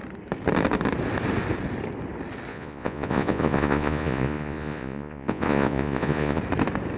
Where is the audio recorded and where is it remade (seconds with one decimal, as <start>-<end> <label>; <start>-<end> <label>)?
0.0-2.5 recorded; 2.5-6.4 remade; 6.4-7.0 recorded